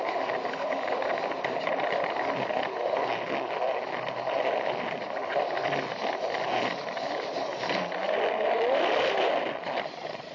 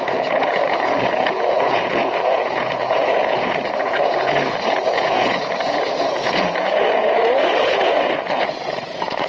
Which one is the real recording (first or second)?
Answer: first